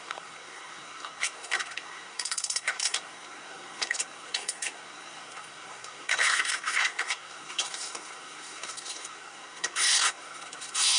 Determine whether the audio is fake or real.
fake